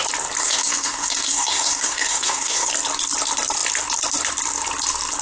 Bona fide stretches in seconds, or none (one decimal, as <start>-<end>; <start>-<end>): 0.0-0.4; 2.7-5.2